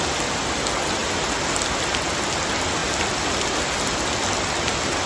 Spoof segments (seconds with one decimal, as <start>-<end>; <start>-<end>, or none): none